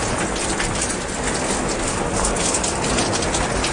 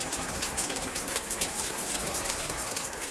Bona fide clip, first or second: first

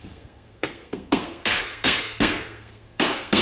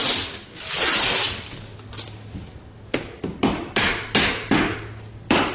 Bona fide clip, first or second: second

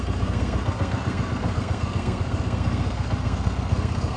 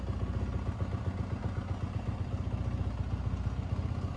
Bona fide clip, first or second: second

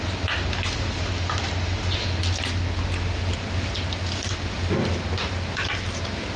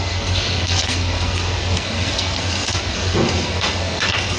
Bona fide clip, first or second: first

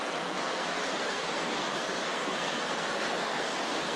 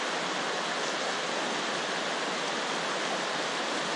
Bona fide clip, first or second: second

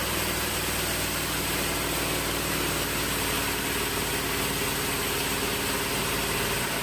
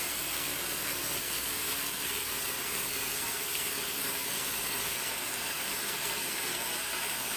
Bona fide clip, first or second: first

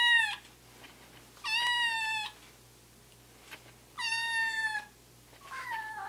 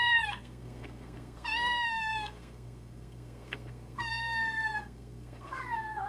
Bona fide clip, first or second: first